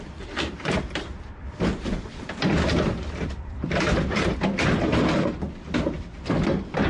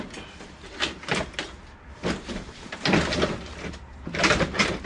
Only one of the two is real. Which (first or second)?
second